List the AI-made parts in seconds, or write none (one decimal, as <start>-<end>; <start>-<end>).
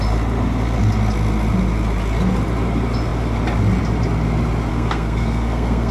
4.7-5.9